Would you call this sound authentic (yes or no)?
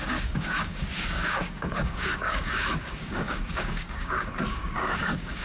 no